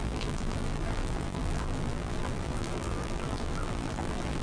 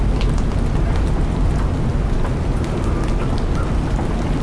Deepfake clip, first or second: first